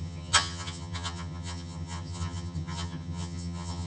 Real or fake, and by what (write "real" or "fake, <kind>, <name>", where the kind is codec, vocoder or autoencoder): fake, vocoder, HiFi-GAN